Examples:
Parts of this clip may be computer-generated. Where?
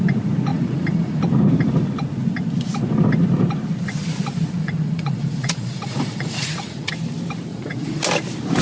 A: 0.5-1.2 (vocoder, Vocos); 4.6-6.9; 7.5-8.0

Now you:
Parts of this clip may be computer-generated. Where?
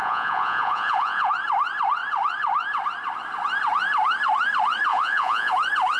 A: 0.0-1.3 (vocoder, Vocos); 4.9-5.5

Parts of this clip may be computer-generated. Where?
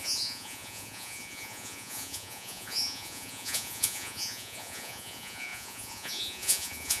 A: 0.0-7.0 (vocoder, Vocos)